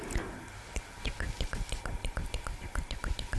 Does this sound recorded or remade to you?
recorded